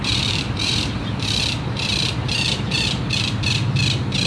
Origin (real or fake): fake